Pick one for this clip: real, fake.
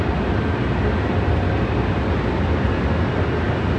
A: real